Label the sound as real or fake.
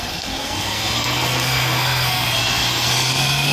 fake